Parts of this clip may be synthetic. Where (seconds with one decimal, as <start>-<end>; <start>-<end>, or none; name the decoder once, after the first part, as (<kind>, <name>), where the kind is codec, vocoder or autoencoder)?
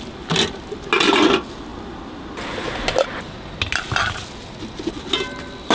none